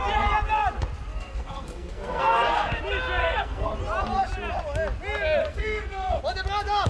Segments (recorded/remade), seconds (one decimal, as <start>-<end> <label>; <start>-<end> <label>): 0.0-1.1 recorded; 1.1-2.8 remade; 2.8-3.2 recorded; 3.2-3.7 remade; 3.7-5.4 recorded; 5.4-6.2 remade; 6.2-6.9 recorded